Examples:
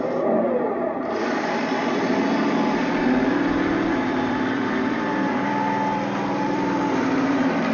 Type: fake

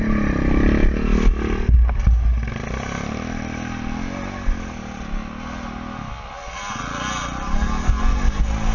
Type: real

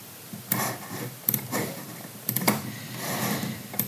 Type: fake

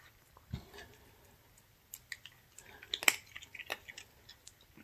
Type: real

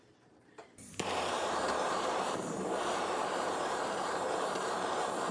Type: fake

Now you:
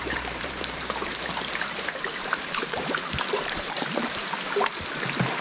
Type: fake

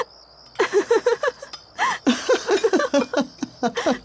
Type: real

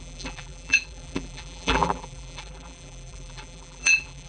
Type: fake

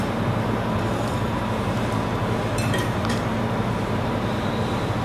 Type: fake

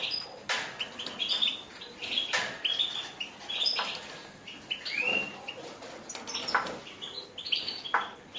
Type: real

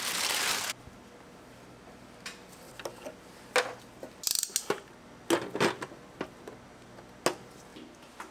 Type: real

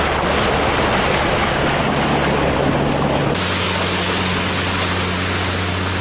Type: real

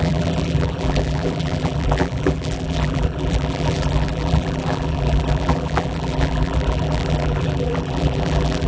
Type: fake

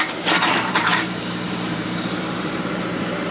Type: fake